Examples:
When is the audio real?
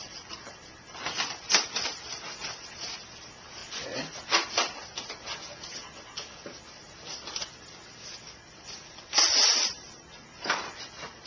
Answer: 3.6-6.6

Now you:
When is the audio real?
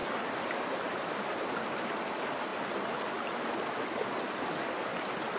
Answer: 1.5-5.4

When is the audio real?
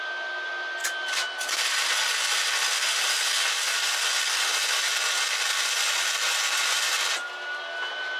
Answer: 0.0-8.2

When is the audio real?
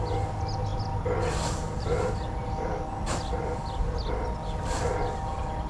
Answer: 0.0-5.7